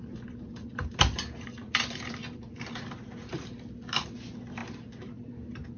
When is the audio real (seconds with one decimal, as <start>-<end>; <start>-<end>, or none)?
0.0-5.8